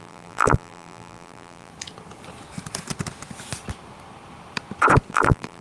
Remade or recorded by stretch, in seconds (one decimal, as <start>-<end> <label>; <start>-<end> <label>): 0.0-1.7 remade; 1.7-5.1 recorded; 5.1-5.6 remade